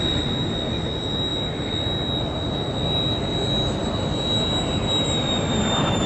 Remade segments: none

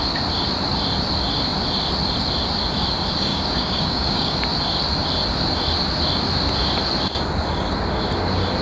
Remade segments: 3.3-4.4 (codec, DAC)

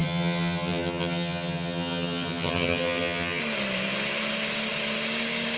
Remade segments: 0.0-3.4 (vocoder, HiFi-GAN)

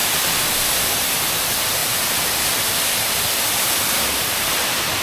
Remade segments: 1.4-1.8 (vocoder, BigVGAN v2); 3.2-5.0